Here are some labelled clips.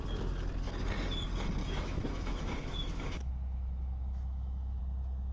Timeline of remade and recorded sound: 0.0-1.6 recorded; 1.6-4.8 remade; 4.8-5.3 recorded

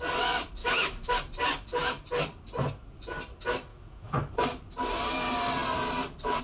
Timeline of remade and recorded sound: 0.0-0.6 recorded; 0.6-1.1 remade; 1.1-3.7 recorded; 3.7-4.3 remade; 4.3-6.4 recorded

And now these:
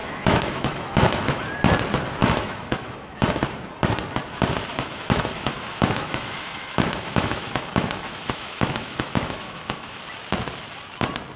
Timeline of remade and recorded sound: 0.0-1.4 remade; 1.4-2.2 recorded; 2.2-3.3 remade; 3.3-4.7 recorded; 4.7-10.0 remade; 10.0-11.4 recorded

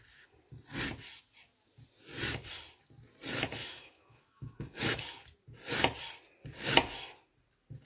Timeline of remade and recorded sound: 0.0-3.6 recorded; 3.6-5.0 remade; 5.0-7.9 recorded